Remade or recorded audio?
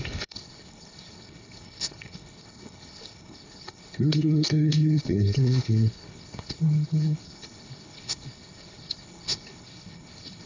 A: remade